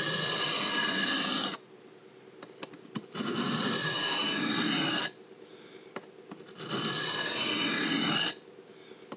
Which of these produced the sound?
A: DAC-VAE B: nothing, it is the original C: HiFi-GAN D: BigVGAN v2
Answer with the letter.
B